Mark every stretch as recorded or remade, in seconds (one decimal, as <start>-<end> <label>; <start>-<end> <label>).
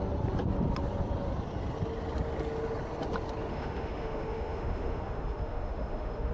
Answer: 0.0-3.5 recorded; 3.5-6.3 remade